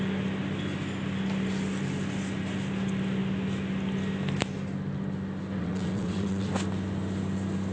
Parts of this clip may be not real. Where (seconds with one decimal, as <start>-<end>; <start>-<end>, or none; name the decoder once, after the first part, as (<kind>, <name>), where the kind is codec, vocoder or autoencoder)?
5.6-6.5 (vocoder, WaveNeXt)